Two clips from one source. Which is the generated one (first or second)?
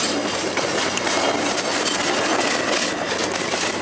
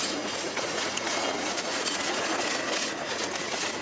second